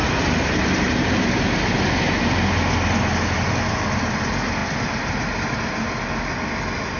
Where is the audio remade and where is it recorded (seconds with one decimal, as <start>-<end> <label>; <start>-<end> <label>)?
0.0-7.0 recorded